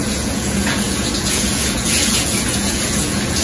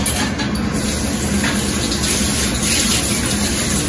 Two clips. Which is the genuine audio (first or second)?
second